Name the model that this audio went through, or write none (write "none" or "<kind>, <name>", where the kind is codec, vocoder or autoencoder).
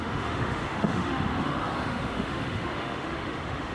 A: autoencoder, DAC-VAE